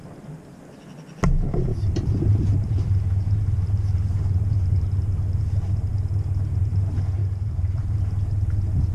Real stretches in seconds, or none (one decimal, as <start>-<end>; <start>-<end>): 0.0-1.7; 5.4-7.2; 8.0-8.9